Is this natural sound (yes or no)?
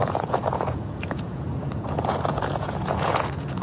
no